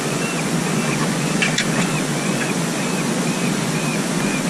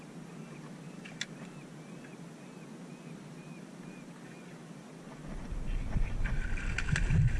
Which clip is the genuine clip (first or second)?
second